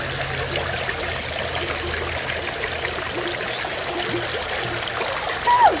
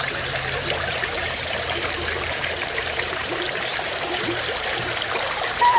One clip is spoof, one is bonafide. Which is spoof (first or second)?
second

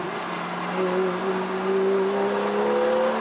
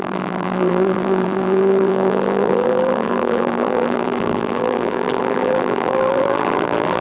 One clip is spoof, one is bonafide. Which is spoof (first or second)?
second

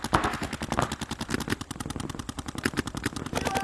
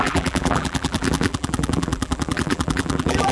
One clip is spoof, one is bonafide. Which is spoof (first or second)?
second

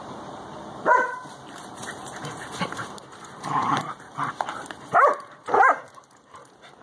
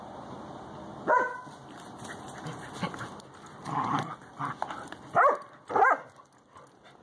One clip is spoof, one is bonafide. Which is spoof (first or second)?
first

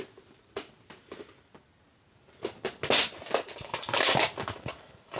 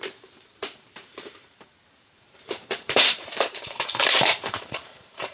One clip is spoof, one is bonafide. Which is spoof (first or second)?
second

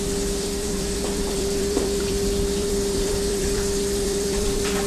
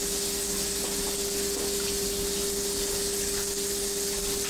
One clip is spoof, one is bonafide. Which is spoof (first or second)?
first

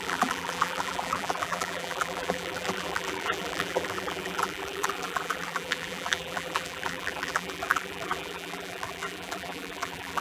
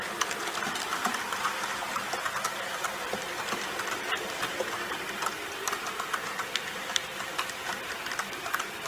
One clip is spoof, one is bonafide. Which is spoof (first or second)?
first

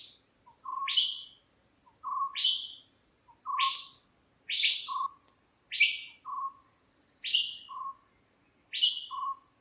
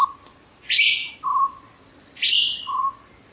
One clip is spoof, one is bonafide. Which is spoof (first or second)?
second